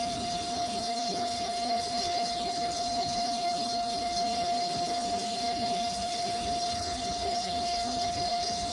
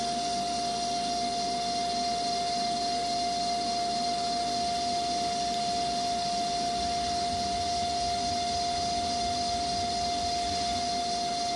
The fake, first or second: first